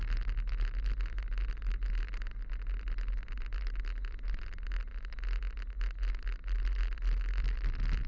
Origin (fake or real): real